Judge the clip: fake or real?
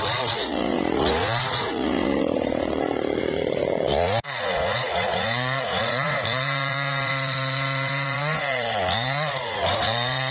fake